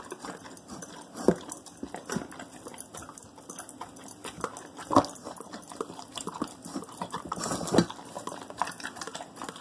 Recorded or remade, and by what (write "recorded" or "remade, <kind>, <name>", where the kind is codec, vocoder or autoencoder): recorded